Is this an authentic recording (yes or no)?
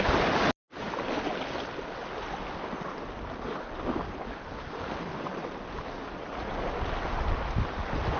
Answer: yes